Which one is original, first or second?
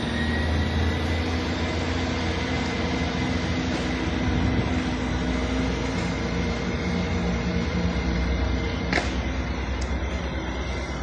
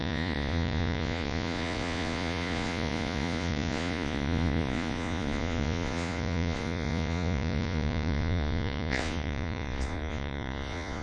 first